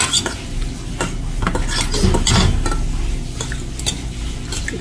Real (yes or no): yes